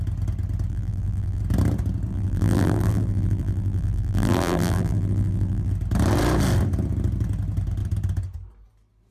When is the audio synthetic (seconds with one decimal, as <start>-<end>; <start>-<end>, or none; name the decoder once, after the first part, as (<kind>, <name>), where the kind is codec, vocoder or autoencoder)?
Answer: 0.7-1.4 (vocoder, BigVGAN v2); 2.1-5.7